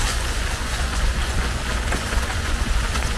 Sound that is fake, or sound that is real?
fake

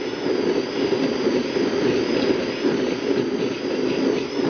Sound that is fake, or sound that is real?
real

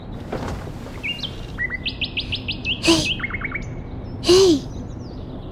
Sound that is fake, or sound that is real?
real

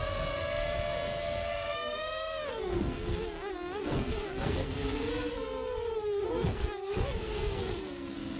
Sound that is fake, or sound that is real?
fake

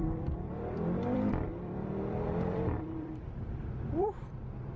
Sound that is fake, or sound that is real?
fake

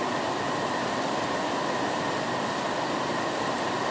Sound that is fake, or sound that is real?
real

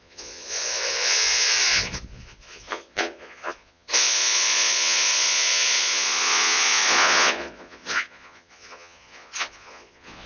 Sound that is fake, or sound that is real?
fake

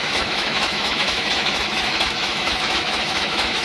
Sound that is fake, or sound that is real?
fake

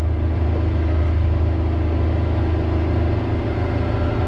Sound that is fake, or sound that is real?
real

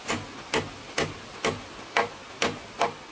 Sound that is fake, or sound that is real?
real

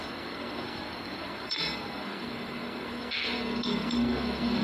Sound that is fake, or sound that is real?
fake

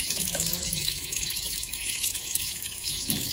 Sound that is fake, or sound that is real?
fake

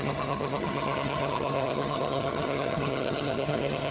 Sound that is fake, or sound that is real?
fake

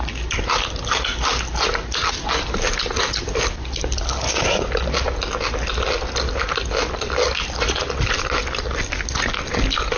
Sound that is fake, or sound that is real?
real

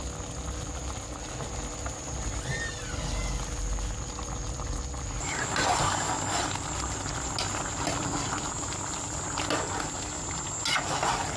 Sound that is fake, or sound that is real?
real